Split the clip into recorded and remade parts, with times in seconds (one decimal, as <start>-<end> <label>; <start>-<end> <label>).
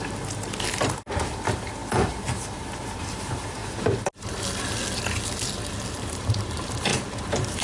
0.0-3.6 remade; 3.6-5.9 recorded; 5.9-7.6 remade